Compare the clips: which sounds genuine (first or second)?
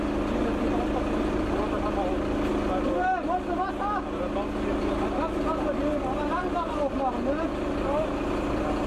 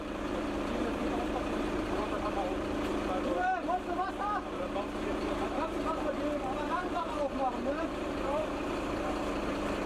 first